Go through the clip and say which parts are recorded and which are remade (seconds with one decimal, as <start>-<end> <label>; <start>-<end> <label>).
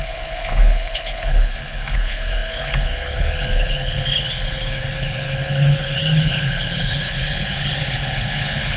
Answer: 0.0-8.8 remade